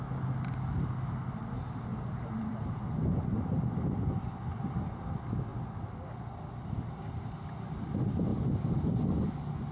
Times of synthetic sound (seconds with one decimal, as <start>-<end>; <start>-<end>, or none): 1.9-3.4